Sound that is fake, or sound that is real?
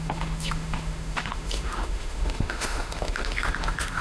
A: fake